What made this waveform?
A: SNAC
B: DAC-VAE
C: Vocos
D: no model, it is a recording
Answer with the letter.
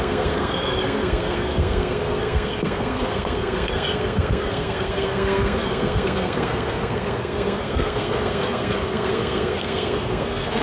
A